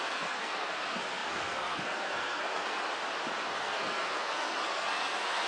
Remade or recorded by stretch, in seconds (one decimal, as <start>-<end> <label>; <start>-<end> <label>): 0.0-2.9 remade; 2.9-3.4 recorded; 3.4-5.5 remade